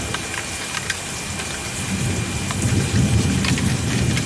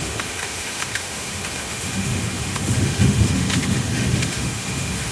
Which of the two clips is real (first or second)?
first